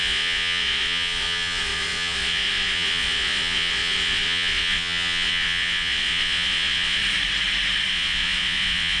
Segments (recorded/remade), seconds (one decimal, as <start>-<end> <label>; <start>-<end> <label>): 0.0-7.0 remade; 7.0-7.9 recorded; 7.9-9.0 remade